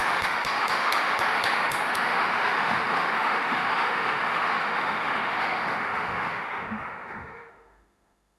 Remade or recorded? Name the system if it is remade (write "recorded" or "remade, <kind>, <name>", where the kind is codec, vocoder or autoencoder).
remade, autoencoder, DAC-VAE